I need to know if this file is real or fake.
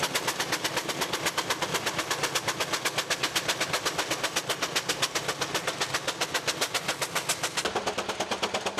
real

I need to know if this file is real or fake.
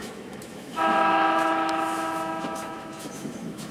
fake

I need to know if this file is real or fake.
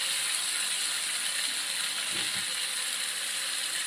real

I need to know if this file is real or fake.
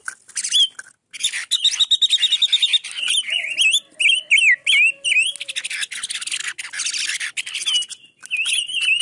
real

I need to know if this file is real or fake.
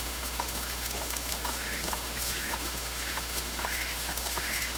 fake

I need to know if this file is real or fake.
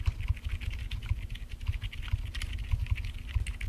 real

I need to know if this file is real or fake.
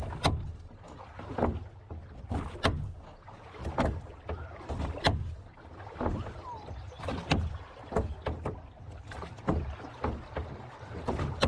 real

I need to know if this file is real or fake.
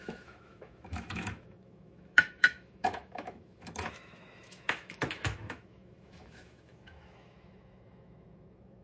fake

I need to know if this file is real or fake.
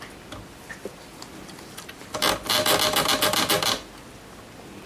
real